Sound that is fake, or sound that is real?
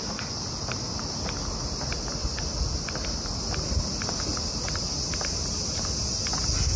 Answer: real